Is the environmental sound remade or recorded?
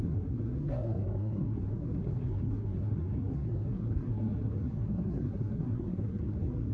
remade